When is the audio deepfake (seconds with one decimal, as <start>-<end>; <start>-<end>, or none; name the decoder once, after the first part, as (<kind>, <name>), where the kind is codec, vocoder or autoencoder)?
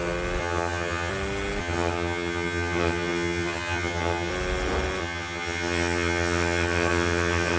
0.4-1.1 (vocoder, HiFi-GAN); 1.6-4.3; 5.0-7.6